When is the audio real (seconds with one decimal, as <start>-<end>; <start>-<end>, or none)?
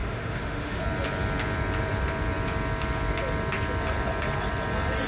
0.8-5.1